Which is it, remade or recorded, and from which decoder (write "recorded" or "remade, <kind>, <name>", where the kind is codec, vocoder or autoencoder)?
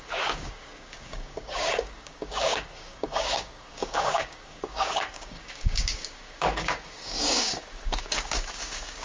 remade, codec, DAC